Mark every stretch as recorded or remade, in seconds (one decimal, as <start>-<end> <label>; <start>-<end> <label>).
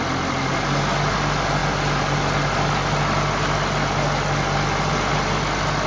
0.0-5.9 recorded